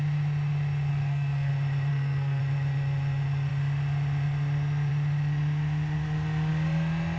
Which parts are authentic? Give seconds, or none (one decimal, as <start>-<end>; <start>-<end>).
0.0-0.9; 1.5-1.9; 2.4-7.2